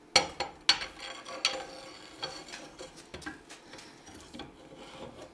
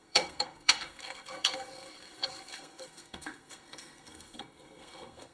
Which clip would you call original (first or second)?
first